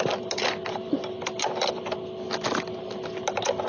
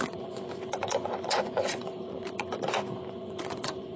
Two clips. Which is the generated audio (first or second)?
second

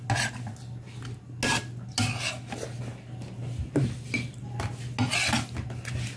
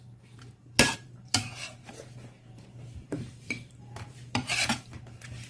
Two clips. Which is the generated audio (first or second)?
second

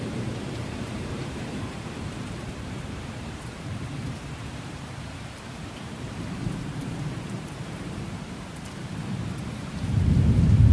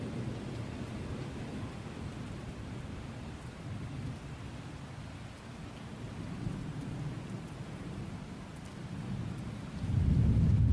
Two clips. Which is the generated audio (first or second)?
first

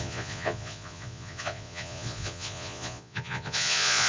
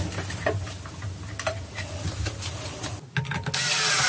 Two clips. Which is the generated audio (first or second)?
first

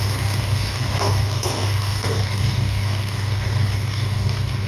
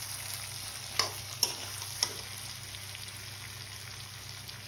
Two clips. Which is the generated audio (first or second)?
first